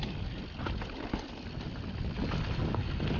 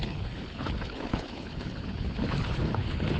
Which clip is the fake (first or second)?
second